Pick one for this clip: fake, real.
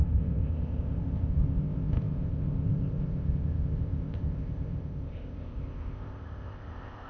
fake